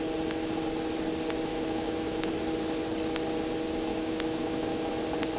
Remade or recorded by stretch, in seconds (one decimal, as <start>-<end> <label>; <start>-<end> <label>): 0.0-1.5 recorded; 1.5-2.3 remade; 2.3-3.9 recorded; 3.9-4.9 remade; 4.9-5.4 recorded